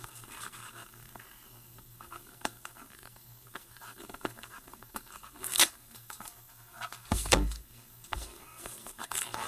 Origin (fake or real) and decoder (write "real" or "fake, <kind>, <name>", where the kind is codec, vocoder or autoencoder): fake, codec, SNAC